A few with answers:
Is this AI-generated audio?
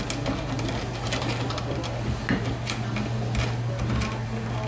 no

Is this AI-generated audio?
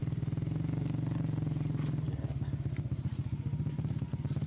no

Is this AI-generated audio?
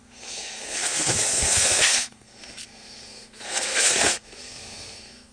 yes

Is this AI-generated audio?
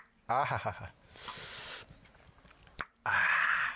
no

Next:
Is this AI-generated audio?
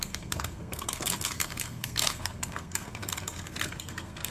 yes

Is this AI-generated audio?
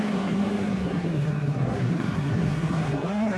yes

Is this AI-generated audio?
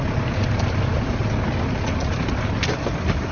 no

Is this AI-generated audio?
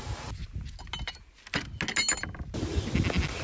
no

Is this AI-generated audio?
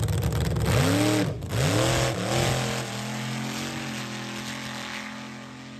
no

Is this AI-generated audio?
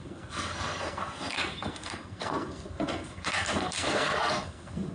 yes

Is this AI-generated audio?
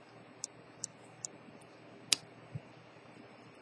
no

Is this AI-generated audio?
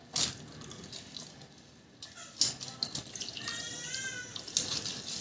no